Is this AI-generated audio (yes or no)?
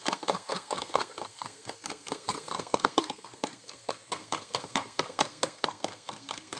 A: yes